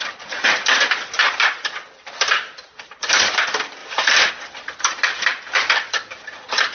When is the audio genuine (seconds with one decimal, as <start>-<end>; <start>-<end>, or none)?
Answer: 0.0-1.2; 3.2-3.8; 4.3-6.7